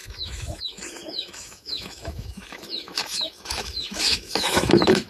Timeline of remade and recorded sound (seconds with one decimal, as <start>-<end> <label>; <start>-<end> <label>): 0.0-5.1 remade